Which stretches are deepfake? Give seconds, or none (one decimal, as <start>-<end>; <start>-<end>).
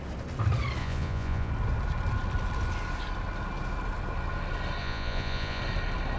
0.8-1.5; 4.8-5.6